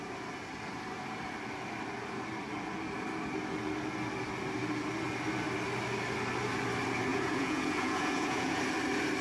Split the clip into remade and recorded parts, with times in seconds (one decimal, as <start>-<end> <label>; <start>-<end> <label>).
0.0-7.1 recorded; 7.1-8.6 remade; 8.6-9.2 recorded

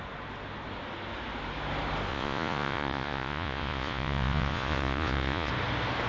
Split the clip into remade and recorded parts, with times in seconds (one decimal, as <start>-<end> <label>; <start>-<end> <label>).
0.0-2.1 recorded; 2.1-5.5 remade; 5.5-6.1 recorded

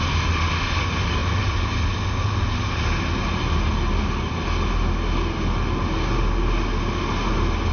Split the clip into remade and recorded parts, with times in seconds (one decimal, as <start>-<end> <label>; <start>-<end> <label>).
0.0-7.7 recorded

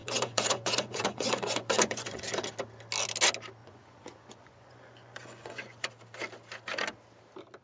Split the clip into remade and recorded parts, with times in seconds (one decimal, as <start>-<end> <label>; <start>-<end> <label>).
0.0-2.2 remade; 2.2-3.6 recorded; 3.6-5.9 remade; 5.9-7.6 recorded